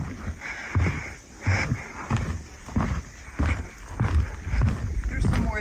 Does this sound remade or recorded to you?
recorded